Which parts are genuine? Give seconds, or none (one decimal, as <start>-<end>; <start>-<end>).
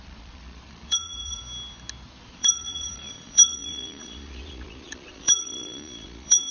1.4-2.2